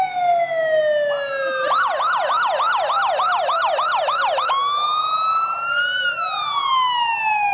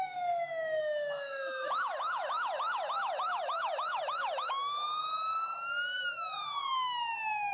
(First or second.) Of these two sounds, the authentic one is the first